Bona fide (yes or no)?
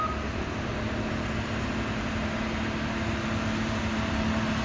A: yes